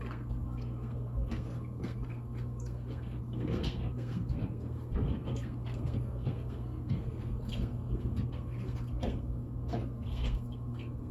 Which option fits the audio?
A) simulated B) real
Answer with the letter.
A